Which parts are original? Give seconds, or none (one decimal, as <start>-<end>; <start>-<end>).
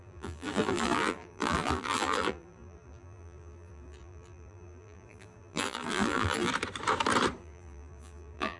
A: 6.5-7.4